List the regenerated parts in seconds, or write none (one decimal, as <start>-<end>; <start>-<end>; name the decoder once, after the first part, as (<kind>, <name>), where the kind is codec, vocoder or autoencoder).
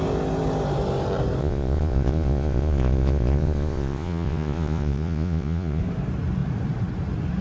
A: 1.4-5.8 (vocoder, Vocos)